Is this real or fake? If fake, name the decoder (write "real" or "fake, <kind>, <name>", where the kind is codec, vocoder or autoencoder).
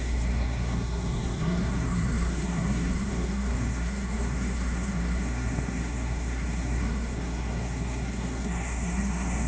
fake, codec, SNAC